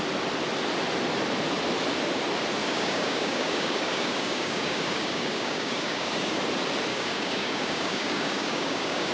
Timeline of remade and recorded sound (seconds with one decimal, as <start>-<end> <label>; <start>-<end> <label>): 0.0-2.6 recorded; 2.6-6.4 remade; 6.4-6.9 recorded; 6.9-9.1 remade